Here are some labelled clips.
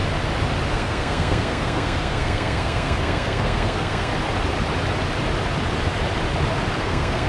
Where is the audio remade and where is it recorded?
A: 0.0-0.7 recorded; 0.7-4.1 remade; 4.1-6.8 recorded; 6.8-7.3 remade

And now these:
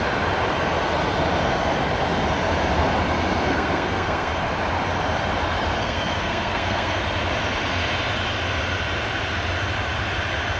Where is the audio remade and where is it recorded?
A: 0.0-3.5 recorded; 3.5-4.3 remade; 4.3-5.8 recorded; 5.8-7.0 remade; 7.0-10.6 recorded

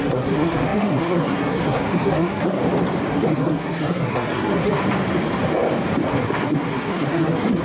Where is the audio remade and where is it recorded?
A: 0.0-2.6 remade; 2.6-3.1 recorded; 3.1-4.8 remade; 4.8-6.1 recorded; 6.1-7.6 remade